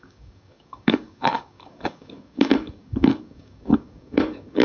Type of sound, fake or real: fake